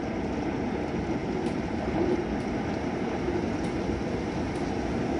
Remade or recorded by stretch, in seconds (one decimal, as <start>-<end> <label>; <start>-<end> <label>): 0.0-1.2 recorded; 1.2-4.3 remade; 4.3-5.2 recorded